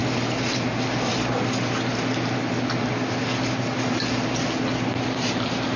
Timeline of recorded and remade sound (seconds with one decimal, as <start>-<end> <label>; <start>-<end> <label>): 0.0-5.8 recorded